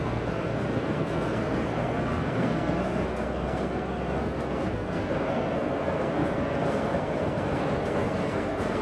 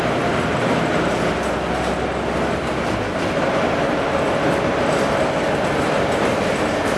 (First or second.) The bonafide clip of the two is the second